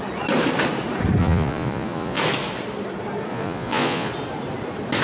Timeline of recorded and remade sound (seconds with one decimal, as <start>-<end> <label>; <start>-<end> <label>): 0.0-1.2 recorded; 1.2-2.2 remade; 2.2-3.3 recorded; 3.3-4.1 remade; 4.1-5.0 recorded